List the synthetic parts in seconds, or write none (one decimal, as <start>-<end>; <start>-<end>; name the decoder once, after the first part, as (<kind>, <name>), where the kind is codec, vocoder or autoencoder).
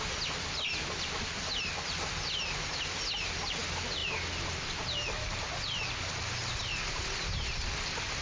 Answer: none